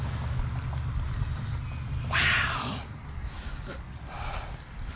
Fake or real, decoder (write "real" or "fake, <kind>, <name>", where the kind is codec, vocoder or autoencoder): real